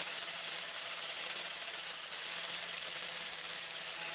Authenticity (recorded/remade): remade